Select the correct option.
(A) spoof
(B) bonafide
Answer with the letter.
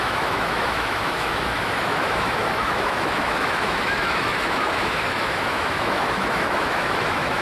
A